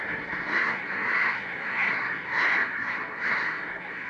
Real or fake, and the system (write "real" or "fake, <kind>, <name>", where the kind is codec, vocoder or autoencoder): fake, codec, SNAC